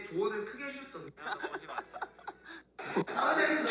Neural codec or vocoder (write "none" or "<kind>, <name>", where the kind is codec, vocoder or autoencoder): none